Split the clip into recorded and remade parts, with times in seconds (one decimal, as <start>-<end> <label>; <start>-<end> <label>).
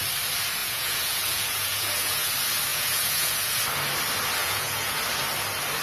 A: 0.0-0.6 recorded; 0.6-2.3 remade; 2.3-2.7 recorded; 2.7-3.6 remade; 3.6-4.4 recorded; 4.4-5.0 remade; 5.0-5.8 recorded